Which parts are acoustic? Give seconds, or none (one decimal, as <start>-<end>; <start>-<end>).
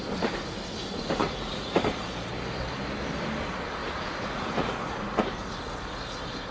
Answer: 0.0-1.2; 1.8-3.8; 5.2-6.5